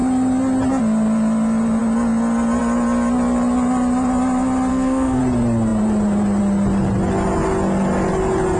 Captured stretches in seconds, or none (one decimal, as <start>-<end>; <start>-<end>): 0.0-4.7; 5.2-8.6